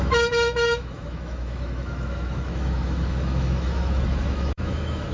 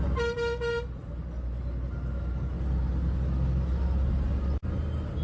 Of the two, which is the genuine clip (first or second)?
second